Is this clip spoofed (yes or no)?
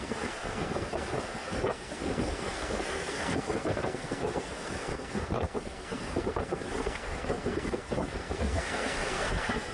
yes